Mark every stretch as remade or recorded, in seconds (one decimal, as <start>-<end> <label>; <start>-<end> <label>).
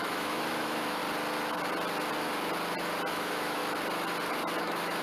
0.0-1.0 remade; 1.0-3.1 recorded; 3.1-3.6 remade; 3.6-4.6 recorded; 4.6-5.0 remade